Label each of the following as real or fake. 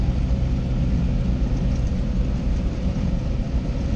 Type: real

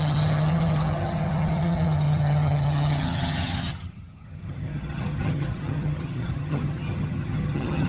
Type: fake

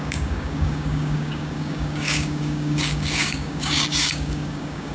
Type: fake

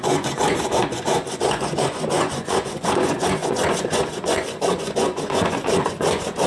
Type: fake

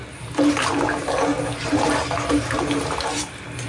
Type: real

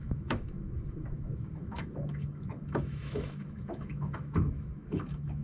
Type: fake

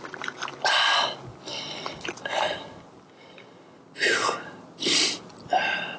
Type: real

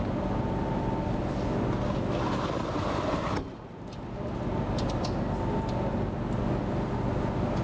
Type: real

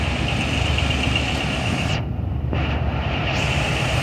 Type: fake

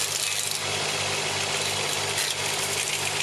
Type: real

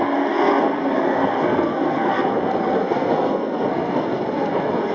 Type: fake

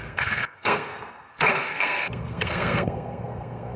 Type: fake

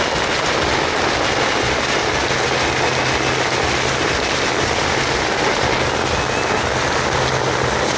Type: real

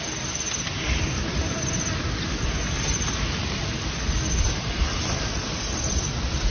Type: real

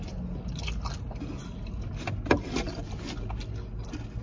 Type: real